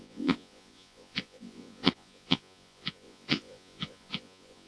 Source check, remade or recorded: remade